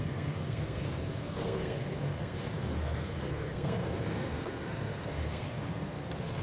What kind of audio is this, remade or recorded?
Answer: remade